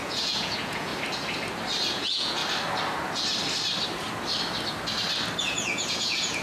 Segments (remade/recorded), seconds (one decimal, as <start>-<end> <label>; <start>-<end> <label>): 0.0-0.9 remade; 0.9-1.9 recorded; 1.9-2.4 remade; 2.4-5.4 recorded; 5.4-6.4 remade